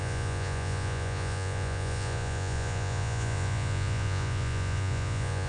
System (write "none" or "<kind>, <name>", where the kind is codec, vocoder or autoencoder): vocoder, Vocos